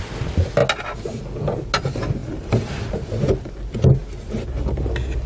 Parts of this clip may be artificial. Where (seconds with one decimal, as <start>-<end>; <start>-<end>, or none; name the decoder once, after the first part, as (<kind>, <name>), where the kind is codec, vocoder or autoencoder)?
2.2-2.9 (vocoder, BigVGAN v2)